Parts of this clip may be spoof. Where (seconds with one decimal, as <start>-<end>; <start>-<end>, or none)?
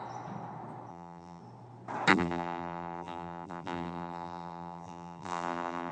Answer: 0.9-1.4; 2.1-5.9